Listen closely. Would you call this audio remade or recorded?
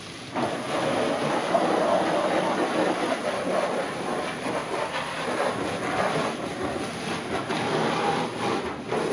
recorded